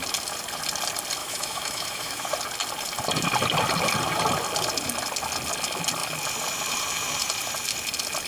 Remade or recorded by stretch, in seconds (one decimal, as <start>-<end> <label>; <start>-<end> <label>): 0.0-1.2 recorded; 1.2-2.3 remade; 2.3-8.3 recorded